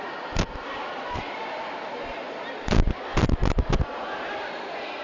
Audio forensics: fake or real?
real